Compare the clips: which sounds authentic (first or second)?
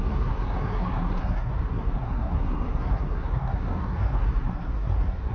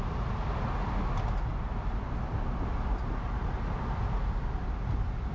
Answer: second